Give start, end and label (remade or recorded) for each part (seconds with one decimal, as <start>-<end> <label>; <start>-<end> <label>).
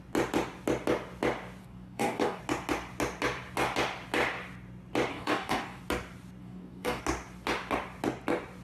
0.0-1.6 recorded; 1.6-2.4 remade; 2.4-5.1 recorded; 5.1-5.8 remade; 5.8-6.4 recorded; 6.4-7.0 remade; 7.0-8.6 recorded